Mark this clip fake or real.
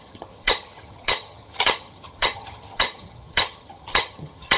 fake